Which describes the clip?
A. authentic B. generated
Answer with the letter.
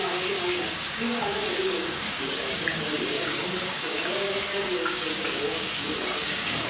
B